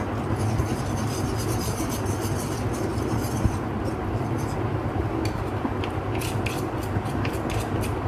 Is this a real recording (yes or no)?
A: yes